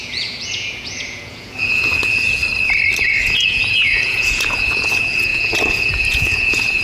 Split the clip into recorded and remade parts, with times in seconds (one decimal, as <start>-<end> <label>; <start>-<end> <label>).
0.0-2.4 remade; 2.4-3.0 recorded; 3.0-6.8 remade